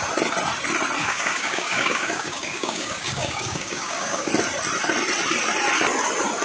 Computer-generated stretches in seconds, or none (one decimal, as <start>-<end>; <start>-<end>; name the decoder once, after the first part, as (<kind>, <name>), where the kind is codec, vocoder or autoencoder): 1.0-4.3 (codec, DAC)